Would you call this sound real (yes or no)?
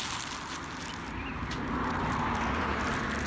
yes